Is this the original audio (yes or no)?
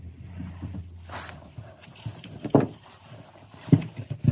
yes